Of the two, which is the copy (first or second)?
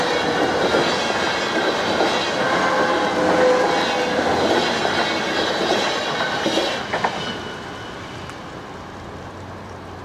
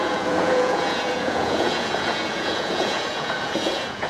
second